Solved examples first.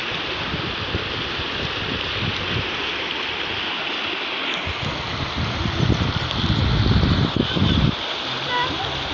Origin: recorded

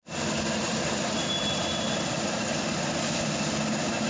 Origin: recorded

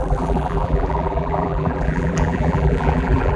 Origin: remade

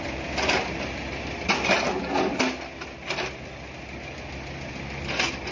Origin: recorded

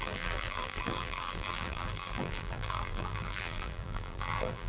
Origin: remade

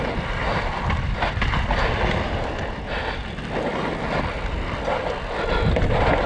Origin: recorded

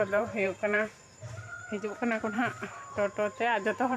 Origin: remade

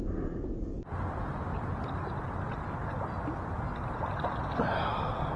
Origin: recorded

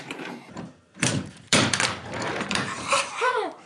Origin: remade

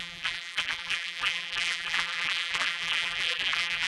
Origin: remade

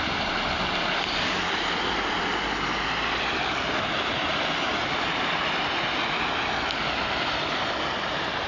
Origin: recorded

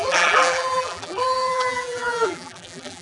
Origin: remade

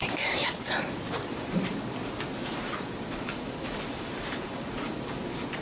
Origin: remade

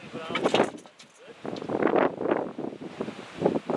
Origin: recorded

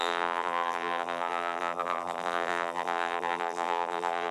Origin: remade